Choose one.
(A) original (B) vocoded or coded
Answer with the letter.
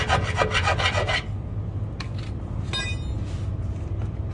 A